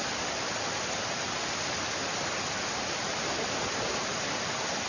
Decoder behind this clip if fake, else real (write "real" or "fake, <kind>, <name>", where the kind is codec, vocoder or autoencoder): real